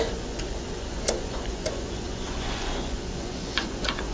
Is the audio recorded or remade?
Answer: remade